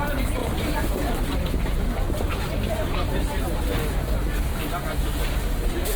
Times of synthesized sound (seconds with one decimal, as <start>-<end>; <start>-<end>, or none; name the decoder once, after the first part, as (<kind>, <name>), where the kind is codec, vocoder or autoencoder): 0.4-2.3 (vocoder, BigVGAN v2)